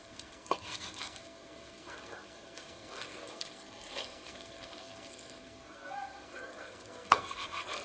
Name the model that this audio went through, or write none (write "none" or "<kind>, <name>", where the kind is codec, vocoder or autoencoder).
codec, SNAC